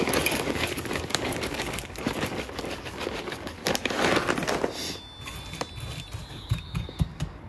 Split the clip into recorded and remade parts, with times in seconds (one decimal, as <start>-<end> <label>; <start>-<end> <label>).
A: 0.0-3.6 remade; 3.6-6.2 recorded; 6.2-7.5 remade